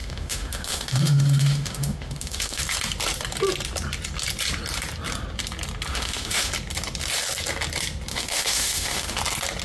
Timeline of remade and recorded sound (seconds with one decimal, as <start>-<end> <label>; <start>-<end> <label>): 0.0-2.6 remade; 2.6-5.9 recorded; 5.9-6.5 remade; 6.5-8.1 recorded; 8.1-9.2 remade; 9.2-9.6 recorded